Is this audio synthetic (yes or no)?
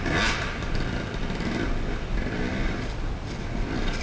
no